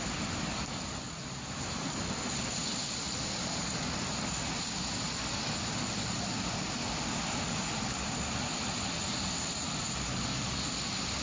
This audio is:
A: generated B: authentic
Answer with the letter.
B